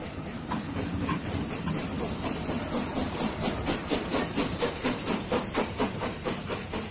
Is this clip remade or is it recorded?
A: remade